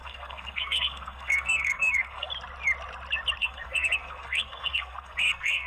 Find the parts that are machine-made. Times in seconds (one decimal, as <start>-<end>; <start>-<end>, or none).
0.0-2.3; 3.4-5.7